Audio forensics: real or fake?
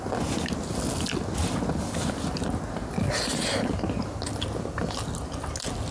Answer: real